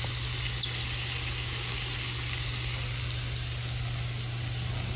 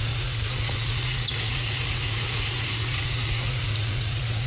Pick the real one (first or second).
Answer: first